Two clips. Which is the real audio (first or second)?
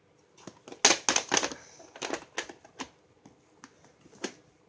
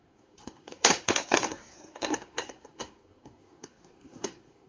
first